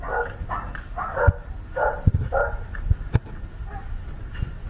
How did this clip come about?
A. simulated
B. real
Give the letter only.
B